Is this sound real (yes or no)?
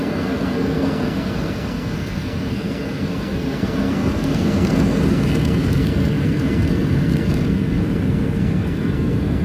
no